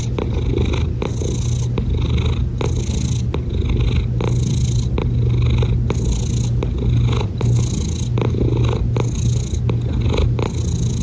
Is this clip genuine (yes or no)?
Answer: yes